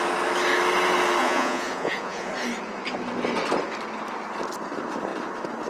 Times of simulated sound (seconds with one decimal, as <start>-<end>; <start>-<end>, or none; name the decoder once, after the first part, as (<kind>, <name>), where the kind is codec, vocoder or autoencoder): 1.2-2.3 (vocoder, Vocos)